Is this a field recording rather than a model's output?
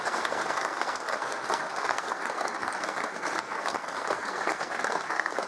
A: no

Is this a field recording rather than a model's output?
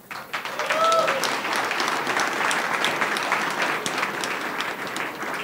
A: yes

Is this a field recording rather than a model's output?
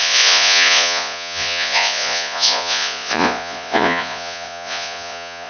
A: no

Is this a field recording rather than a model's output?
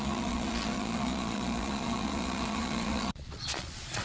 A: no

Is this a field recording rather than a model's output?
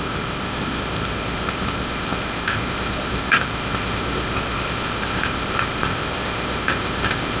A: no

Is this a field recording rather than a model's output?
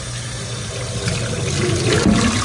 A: yes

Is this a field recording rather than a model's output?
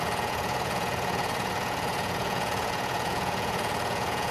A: no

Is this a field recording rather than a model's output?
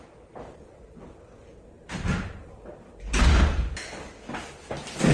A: yes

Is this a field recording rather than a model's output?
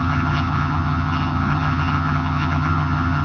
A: no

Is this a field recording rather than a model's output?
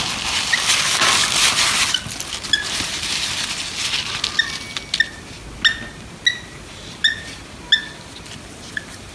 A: yes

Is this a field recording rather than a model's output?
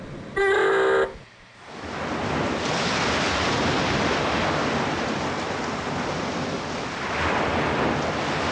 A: yes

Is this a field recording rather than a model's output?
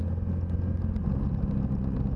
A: yes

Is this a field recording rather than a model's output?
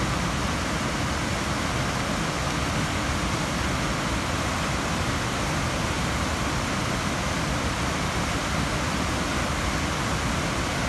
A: yes